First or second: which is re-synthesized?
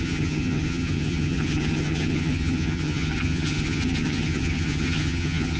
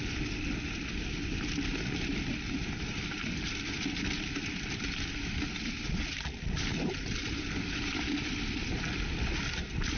first